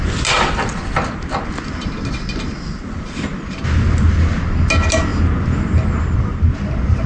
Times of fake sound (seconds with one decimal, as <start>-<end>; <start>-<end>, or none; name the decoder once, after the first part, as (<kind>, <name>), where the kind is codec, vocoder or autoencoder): none